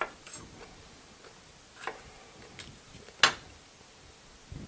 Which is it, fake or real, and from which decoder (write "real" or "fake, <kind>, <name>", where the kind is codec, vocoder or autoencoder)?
real